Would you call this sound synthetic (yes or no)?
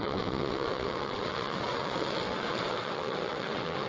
yes